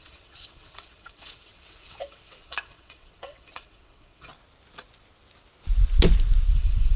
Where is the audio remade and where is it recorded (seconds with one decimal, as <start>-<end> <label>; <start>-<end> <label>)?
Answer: 0.0-4.3 remade; 4.3-6.5 recorded; 6.5-7.0 remade